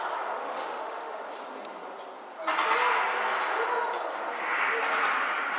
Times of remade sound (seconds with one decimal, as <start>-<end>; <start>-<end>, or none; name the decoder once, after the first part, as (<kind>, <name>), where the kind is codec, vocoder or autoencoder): 0.4-1.2 (autoencoder, DAC-VAE)